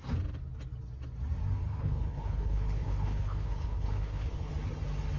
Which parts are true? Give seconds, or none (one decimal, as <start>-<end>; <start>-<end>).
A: 0.0-1.6; 4.5-5.2